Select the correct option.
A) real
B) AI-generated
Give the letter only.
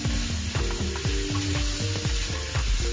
A